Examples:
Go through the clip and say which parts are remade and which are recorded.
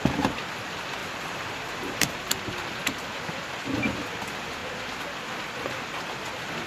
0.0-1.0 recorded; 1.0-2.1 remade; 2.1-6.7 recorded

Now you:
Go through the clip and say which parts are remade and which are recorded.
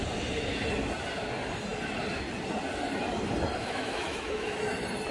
0.0-3.6 recorded; 3.6-4.6 remade; 4.6-5.1 recorded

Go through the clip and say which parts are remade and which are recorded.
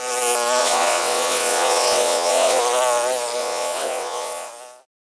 0.0-0.6 recorded; 0.6-2.6 remade; 2.6-3.4 recorded; 3.4-4.5 remade; 4.5-5.0 recorded